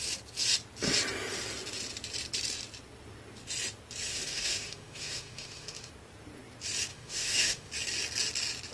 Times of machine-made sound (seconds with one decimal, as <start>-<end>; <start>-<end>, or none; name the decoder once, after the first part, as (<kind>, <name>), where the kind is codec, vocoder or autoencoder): 4.1-5.9 (autoencoder, DAC-VAE); 6.9-7.7